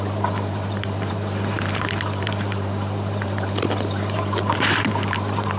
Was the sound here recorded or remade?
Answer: remade